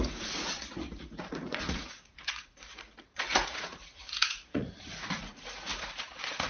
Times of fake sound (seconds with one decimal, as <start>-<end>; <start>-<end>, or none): 0.0-6.5

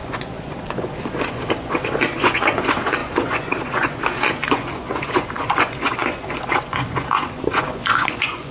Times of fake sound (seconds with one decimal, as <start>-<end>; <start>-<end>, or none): 0.0-8.5

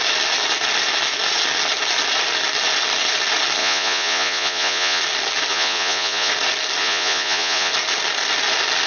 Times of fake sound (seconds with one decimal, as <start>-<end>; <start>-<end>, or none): 3.6-5.0; 5.5-6.3; 6.8-7.7

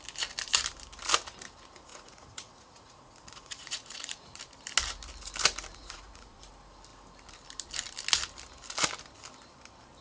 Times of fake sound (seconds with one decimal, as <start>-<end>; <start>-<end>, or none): 1.9-4.4; 5.7-6.5

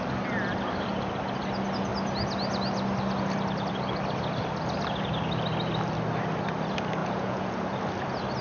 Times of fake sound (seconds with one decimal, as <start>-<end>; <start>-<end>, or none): 7.0-7.6

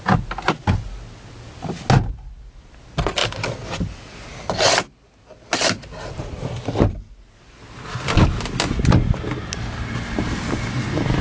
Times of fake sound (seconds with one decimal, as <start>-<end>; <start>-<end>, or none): none

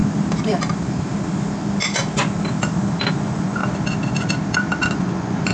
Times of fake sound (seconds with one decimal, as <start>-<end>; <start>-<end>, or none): 3.1-3.6; 4.9-5.5